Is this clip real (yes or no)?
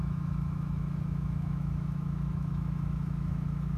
no